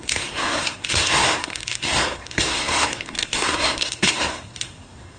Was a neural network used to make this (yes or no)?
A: yes